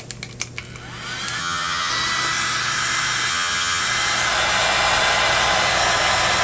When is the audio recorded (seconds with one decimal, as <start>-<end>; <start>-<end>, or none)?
0.0-1.4; 1.9-3.3; 3.8-6.4